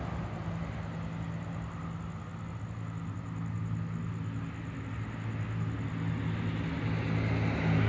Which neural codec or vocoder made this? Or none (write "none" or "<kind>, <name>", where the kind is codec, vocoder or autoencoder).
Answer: none